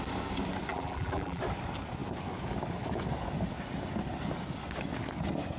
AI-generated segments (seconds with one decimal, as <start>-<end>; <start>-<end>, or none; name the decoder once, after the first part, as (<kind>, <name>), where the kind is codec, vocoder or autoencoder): 0.7-1.4 (vocoder, BigVGAN v2)